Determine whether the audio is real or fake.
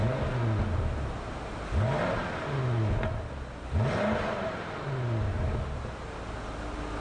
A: real